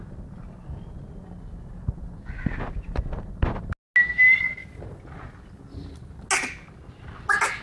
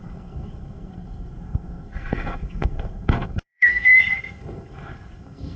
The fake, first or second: second